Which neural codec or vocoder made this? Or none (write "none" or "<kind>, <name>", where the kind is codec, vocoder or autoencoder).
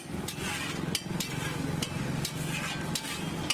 none